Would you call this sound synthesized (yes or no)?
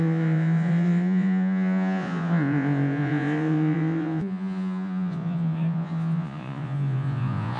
yes